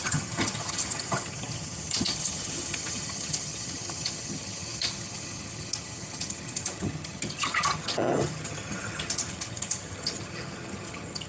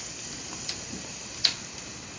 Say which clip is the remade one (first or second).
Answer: first